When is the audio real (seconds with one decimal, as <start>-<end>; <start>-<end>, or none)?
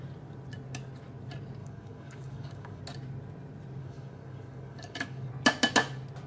0.0-1.6; 2.8-3.8; 5.3-6.3